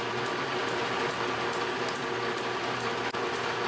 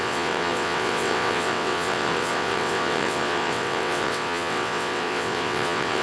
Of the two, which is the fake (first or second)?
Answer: second